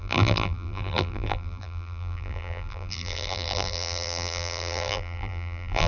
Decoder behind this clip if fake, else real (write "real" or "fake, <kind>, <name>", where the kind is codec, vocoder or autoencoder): fake, vocoder, BigVGAN v2